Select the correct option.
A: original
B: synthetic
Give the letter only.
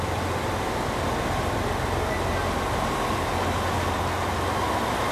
A